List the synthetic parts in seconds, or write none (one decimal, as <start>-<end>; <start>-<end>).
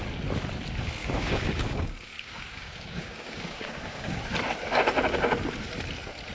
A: 1.0-4.2